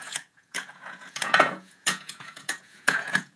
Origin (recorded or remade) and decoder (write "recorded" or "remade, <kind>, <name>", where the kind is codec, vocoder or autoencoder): remade, vocoder, Vocos